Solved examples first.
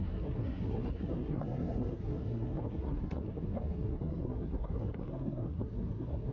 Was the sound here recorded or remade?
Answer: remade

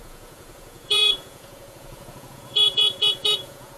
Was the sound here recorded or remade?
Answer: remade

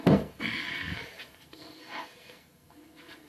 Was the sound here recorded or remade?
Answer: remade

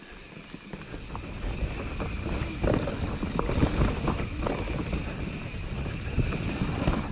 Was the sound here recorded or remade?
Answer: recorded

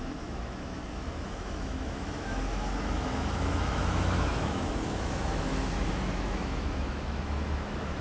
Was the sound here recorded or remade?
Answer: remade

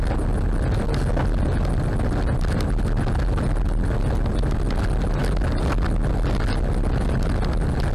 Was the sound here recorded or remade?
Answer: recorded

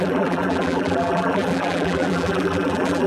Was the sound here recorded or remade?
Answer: remade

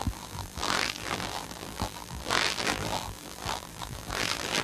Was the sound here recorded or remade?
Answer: remade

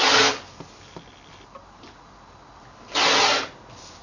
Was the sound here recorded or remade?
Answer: recorded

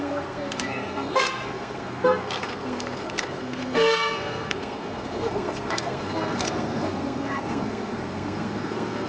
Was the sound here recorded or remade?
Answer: remade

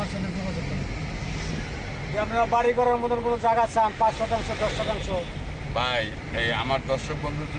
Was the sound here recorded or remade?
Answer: recorded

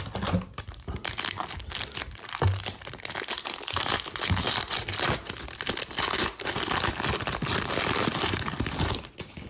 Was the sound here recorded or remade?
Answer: recorded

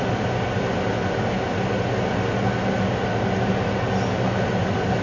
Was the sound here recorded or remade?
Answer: recorded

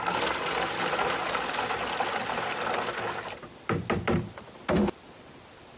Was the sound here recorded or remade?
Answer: recorded